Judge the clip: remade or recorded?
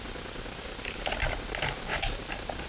recorded